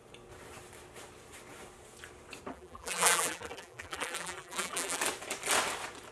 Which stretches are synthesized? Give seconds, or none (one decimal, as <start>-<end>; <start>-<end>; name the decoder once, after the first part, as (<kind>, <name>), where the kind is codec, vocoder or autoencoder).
2.5-5.0 (vocoder, BigVGAN v2)